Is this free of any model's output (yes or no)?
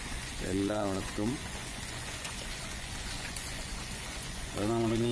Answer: no